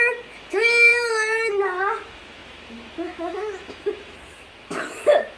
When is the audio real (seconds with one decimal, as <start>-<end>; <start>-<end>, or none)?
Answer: none